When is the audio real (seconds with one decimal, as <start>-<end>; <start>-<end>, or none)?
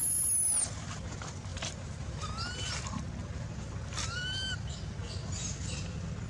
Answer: 0.0-1.5; 2.5-6.3